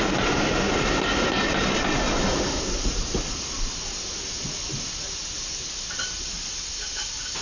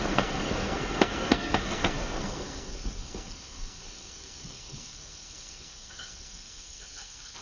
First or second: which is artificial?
second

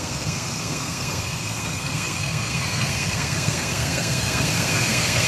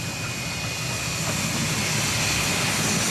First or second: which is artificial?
first